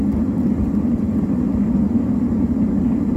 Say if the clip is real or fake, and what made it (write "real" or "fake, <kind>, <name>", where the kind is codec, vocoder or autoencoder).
real